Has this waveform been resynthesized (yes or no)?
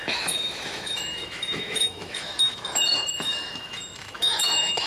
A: yes